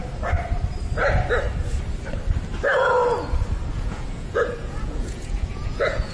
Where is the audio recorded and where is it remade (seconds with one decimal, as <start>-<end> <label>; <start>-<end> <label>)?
0.0-3.7 recorded; 3.7-6.1 remade